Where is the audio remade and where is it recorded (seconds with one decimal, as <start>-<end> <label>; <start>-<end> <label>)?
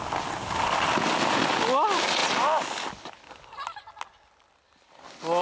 0.0-5.4 recorded